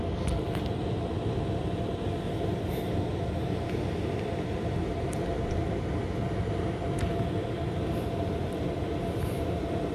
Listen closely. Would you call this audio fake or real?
real